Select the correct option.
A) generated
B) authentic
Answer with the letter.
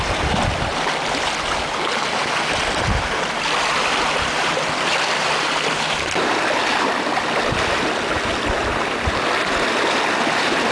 B